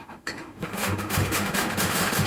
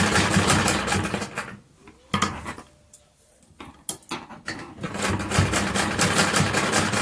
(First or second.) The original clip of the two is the second